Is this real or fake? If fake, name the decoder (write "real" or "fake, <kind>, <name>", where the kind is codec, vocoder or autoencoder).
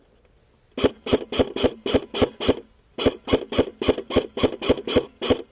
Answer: real